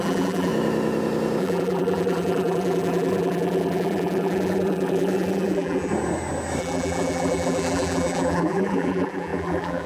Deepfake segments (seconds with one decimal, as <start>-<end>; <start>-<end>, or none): 0.0-0.5; 1.4-5.9; 6.6-9.9